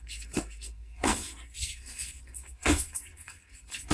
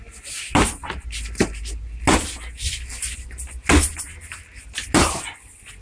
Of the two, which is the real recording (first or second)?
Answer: second